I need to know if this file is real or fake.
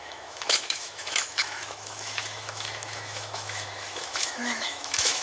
fake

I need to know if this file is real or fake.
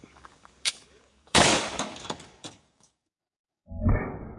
fake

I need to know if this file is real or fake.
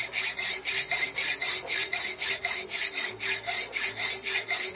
real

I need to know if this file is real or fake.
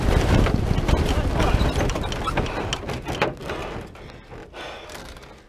real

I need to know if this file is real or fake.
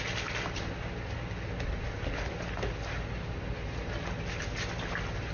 real